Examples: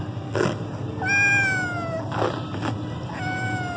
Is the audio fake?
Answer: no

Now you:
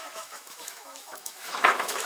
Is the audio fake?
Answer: yes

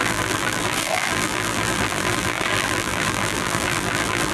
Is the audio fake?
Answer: yes